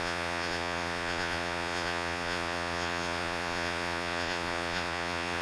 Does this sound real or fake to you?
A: fake